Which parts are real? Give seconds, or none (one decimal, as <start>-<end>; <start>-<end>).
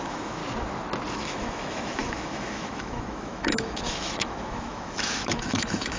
0.4-1.1